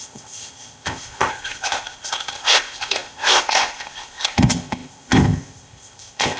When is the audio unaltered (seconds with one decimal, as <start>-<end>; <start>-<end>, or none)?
none